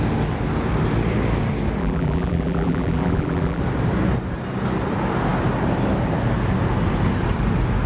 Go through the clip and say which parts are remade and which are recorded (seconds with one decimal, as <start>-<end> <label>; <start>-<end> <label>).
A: 0.0-1.8 recorded; 1.8-3.6 remade; 3.6-7.9 recorded

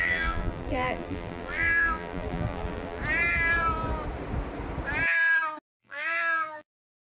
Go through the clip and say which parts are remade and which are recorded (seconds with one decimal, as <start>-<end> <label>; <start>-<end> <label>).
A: 0.0-3.0 remade; 3.0-5.7 recorded; 5.7-7.1 remade

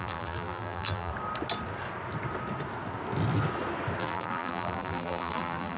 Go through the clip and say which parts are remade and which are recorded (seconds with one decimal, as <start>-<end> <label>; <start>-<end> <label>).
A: 0.0-1.1 remade; 1.1-4.0 recorded; 4.0-5.8 remade

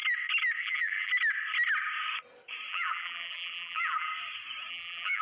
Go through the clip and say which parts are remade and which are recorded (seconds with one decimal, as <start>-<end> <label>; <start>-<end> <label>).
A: 0.0-0.6 recorded; 0.6-1.1 remade; 1.1-2.7 recorded; 2.7-4.1 remade; 4.1-4.7 recorded; 4.7-5.2 remade

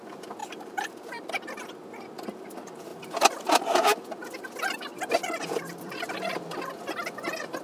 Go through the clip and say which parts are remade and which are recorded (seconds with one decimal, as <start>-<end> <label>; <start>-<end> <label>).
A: 0.0-0.4 recorded; 0.4-1.3 remade; 1.3-4.9 recorded; 4.9-6.3 remade; 6.3-7.6 recorded

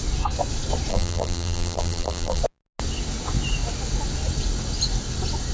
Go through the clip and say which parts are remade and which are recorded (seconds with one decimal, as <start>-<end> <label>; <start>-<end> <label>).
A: 0.0-0.9 recorded; 0.9-2.4 remade; 2.4-5.5 recorded

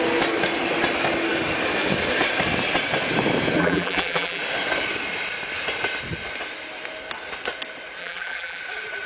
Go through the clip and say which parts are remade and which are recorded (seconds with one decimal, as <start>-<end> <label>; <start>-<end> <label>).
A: 0.0-3.6 recorded; 3.6-4.4 remade; 4.4-8.0 recorded; 8.0-8.6 remade; 8.6-9.1 recorded